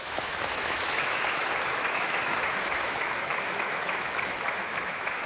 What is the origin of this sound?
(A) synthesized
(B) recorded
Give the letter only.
A